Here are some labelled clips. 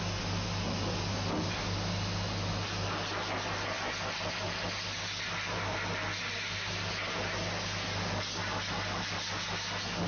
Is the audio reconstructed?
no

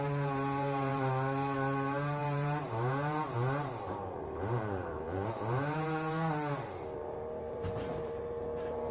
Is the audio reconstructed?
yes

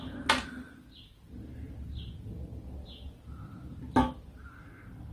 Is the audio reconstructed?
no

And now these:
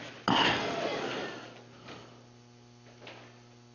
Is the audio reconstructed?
no